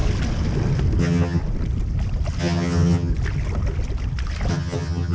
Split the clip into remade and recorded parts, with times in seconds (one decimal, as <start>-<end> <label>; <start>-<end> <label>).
0.0-1.0 recorded; 1.0-1.4 remade; 1.4-2.4 recorded; 2.4-3.1 remade; 3.1-4.5 recorded; 4.5-5.1 remade